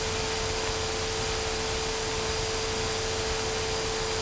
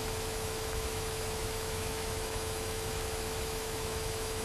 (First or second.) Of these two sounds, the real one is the first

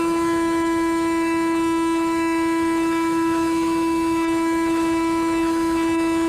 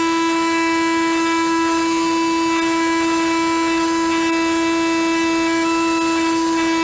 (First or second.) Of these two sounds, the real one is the second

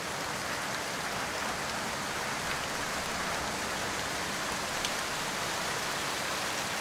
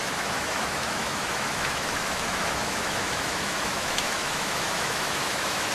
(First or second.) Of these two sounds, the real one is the first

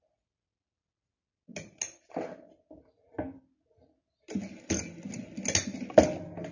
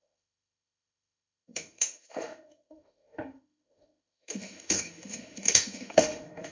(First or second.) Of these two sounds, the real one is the first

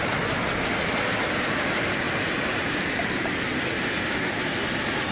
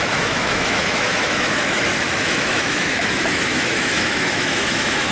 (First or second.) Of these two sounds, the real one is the first